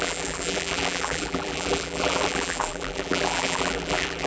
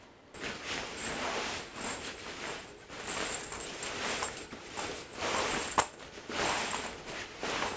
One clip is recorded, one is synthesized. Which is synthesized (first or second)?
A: first